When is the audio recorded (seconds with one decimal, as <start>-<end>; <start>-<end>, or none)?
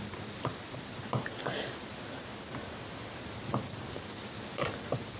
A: 0.5-3.2